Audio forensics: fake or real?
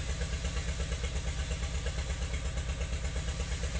real